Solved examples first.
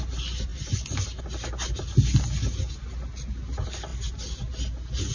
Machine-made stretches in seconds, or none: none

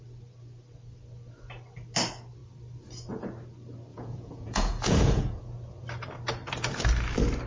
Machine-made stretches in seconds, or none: 3.9-5.4 (vocoder, Vocos)

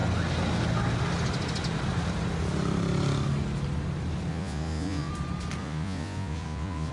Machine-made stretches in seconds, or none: 4.3-5.1 (vocoder, Vocos); 5.6-6.9